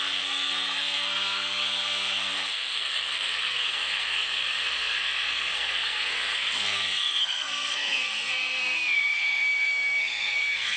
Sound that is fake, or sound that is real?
fake